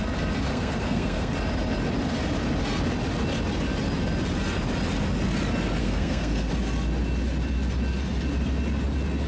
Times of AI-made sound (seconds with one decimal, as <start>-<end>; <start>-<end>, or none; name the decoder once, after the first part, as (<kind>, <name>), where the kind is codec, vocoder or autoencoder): 0.5-1.3 (codec, SNAC); 5.8-6.5